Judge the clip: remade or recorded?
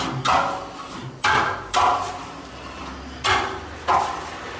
recorded